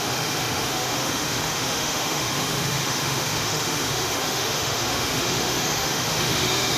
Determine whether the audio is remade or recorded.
remade